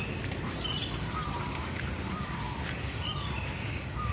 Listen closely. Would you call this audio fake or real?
real